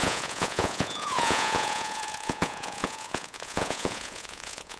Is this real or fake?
fake